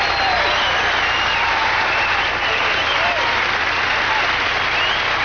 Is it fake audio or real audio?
real